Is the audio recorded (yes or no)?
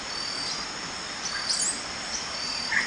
yes